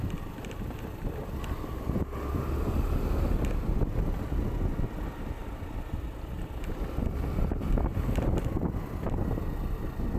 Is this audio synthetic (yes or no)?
no